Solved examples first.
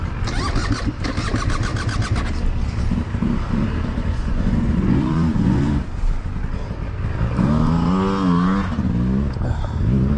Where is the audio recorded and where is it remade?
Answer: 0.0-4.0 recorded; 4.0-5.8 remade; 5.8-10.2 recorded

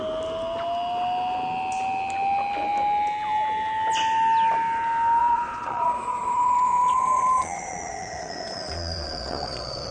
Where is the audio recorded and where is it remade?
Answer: 0.0-5.2 recorded; 5.2-9.9 remade

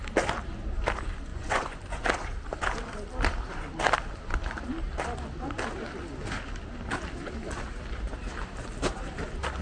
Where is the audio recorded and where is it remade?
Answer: 0.0-1.3 recorded; 1.3-1.8 remade; 1.8-9.6 recorded